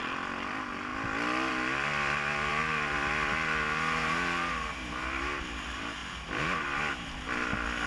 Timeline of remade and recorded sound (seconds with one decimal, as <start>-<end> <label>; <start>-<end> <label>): 0.0-7.9 recorded